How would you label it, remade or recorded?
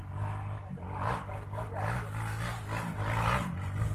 recorded